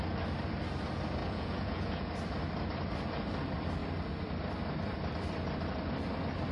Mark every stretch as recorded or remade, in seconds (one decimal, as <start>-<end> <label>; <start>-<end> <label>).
0.0-1.2 recorded; 1.2-2.1 remade; 2.1-6.5 recorded